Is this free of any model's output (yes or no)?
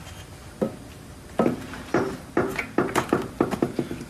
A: yes